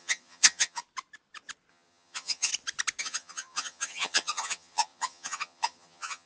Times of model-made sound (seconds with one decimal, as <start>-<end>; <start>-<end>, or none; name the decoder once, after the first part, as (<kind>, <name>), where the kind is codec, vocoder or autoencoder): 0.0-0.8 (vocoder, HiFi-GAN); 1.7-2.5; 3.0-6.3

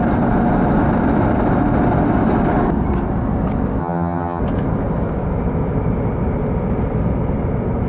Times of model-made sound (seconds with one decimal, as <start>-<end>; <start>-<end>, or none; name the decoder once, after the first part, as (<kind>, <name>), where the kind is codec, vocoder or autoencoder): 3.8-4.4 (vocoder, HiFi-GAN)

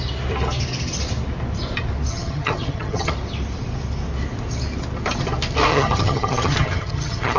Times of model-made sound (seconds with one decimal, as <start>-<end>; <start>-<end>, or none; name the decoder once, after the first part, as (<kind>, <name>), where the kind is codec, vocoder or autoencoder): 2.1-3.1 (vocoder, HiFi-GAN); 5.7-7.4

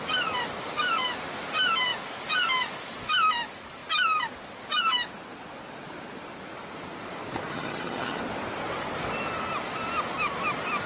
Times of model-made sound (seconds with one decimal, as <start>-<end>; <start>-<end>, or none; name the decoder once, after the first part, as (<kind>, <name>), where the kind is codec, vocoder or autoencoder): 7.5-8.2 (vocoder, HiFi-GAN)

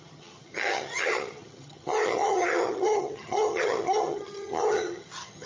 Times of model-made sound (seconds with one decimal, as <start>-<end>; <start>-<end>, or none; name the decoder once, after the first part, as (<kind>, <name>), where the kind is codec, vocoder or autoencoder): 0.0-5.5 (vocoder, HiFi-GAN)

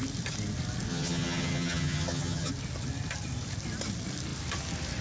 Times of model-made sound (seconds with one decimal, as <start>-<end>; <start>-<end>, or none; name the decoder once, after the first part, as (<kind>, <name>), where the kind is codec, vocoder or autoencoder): 0.9-2.5 (vocoder, HiFi-GAN)

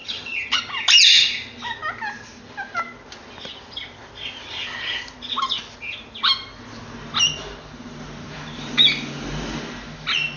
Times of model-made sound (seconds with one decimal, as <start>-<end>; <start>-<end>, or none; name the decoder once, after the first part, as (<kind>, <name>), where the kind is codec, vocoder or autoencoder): 0.0-0.6 (vocoder, HiFi-GAN)

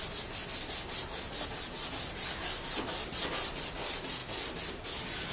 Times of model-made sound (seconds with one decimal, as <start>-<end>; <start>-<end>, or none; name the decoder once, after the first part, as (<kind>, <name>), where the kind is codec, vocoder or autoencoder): none